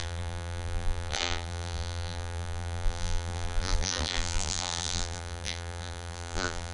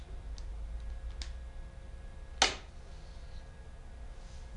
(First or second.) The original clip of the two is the second